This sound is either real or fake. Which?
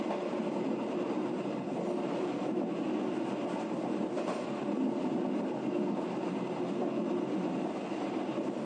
real